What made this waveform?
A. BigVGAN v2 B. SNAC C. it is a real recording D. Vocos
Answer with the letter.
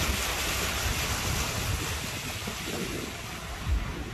C